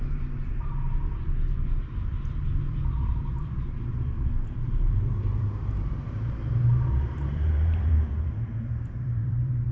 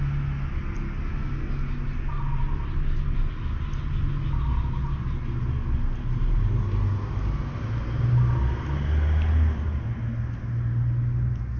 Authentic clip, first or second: second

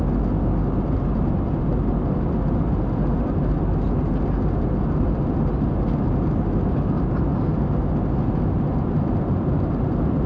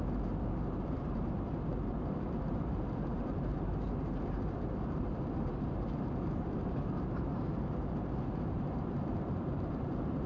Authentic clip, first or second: first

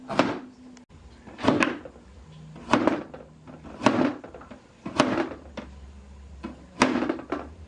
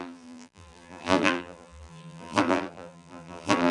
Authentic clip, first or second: first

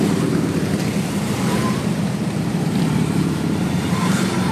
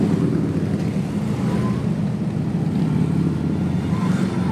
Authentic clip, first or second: second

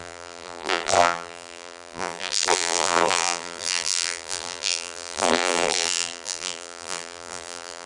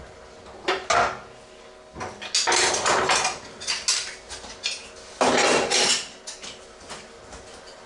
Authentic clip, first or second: second